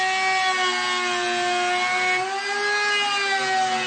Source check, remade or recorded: recorded